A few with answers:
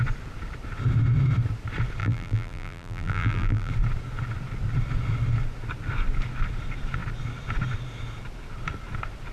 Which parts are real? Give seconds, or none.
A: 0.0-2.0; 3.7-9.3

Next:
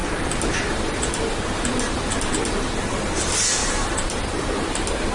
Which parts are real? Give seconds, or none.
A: 0.0-3.6; 4.5-5.1

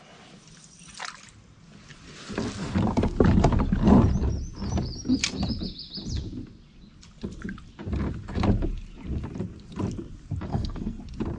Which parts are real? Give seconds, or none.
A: 0.0-10.5; 11.0-11.4

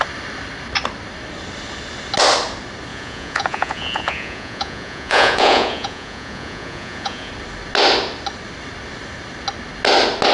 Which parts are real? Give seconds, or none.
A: 0.0-2.9; 7.3-10.3

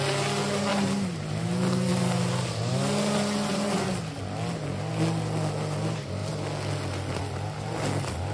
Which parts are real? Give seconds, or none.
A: 0.0-0.7; 1.3-8.3

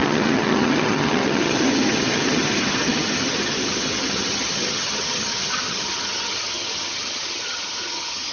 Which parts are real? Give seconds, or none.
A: none

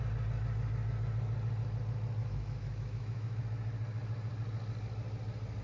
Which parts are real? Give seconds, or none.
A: 0.0-2.2; 3.4-5.6